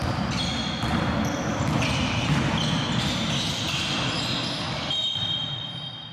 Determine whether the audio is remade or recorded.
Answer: recorded